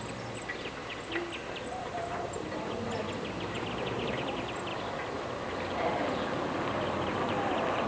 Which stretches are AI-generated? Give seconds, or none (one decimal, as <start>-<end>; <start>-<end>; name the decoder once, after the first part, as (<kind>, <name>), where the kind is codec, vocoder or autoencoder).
none